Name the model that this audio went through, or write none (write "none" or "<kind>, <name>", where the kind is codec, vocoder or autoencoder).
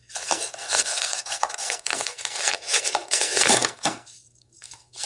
codec, SNAC